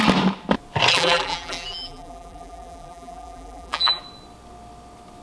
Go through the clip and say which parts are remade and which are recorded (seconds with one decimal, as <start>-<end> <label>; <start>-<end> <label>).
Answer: 0.0-0.9 recorded; 0.9-4.0 remade; 4.0-5.2 recorded